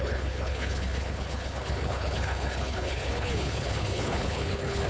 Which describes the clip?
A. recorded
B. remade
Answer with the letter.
B